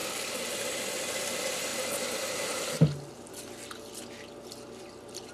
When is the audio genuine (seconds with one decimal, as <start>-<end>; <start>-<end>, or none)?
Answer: 0.0-5.3